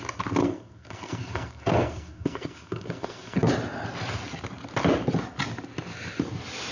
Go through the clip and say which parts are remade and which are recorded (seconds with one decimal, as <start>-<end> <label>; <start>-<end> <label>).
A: 0.0-0.4 recorded; 0.4-3.5 remade; 3.5-6.7 recorded